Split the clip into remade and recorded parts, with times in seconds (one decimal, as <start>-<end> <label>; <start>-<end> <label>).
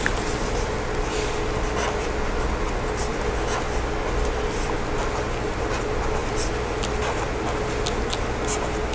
0.0-8.9 recorded